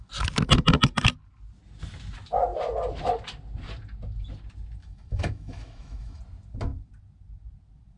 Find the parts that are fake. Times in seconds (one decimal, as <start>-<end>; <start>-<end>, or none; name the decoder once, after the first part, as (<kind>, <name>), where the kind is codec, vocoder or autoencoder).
4.8-6.2 (autoencoder, DAC-VAE)

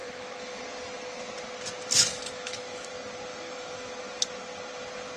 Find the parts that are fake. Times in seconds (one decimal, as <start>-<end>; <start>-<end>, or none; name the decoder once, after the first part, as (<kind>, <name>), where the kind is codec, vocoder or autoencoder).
0.0-0.6 (autoencoder, DAC-VAE); 2.1-2.9; 3.3-3.9